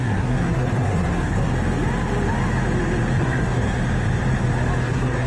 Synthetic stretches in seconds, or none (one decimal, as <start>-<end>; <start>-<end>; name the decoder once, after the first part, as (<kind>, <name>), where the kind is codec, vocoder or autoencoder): 0.0-1.5 (codec, SNAC); 3.2-3.8; 4.8-5.3